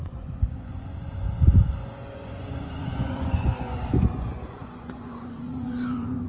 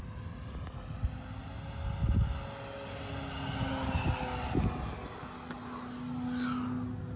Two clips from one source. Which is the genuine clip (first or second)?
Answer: second